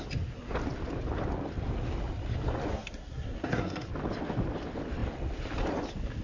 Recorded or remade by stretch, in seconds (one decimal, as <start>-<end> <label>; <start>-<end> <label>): 0.0-2.7 recorded; 2.7-3.9 remade; 3.9-6.2 recorded